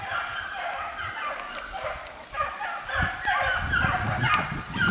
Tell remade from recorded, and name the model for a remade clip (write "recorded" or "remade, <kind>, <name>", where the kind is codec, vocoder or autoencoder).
recorded